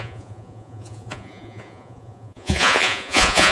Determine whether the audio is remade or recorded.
remade